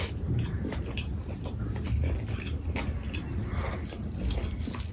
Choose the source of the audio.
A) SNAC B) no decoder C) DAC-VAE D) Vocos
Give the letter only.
B